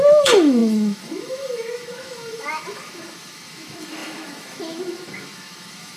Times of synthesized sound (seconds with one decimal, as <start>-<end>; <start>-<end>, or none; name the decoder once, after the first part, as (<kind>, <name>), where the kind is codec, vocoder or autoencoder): 0.0-6.0 (autoencoder, DAC-VAE)